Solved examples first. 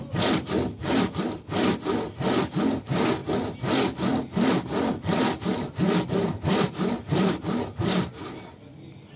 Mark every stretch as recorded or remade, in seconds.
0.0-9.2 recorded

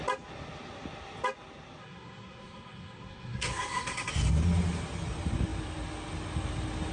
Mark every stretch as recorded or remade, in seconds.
0.0-1.8 recorded; 1.8-4.1 remade; 4.1-6.9 recorded

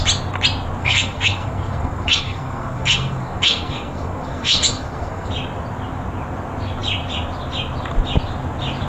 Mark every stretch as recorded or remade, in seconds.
0.0-0.8 recorded; 0.8-5.3 remade; 5.3-8.9 recorded

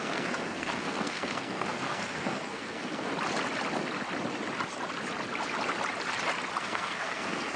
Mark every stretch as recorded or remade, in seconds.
0.0-3.1 remade; 3.1-6.6 recorded; 6.6-7.6 remade